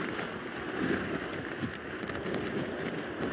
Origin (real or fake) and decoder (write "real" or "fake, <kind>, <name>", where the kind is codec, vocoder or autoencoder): real